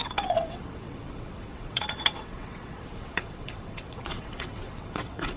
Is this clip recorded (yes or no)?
no